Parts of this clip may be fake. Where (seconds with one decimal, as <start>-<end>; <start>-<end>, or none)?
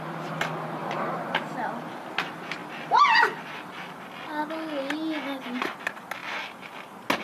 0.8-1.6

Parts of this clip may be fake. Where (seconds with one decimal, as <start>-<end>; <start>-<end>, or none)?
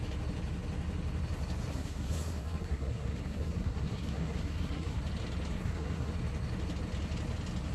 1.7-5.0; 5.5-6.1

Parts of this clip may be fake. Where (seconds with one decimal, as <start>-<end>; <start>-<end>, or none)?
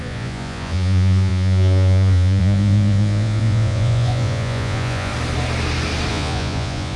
0.0-5.1; 6.1-7.0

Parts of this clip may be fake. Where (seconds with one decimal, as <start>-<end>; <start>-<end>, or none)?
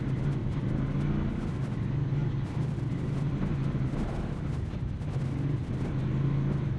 0.4-0.9; 2.2-4.5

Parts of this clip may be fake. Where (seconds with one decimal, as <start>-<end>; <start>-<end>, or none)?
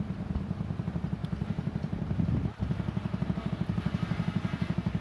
none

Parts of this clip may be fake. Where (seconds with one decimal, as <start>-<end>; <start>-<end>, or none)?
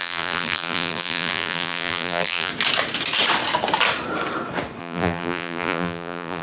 0.0-2.5; 4.8-6.4